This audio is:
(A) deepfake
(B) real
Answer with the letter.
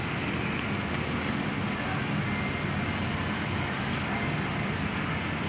B